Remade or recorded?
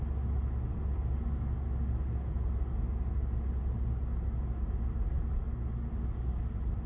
recorded